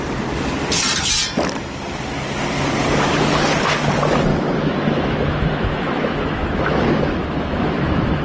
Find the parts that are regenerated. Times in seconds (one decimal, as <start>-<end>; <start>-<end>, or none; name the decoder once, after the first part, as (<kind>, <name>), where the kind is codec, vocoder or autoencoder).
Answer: 4.3-8.2 (autoencoder, DAC-VAE)